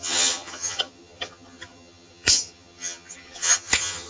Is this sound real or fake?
fake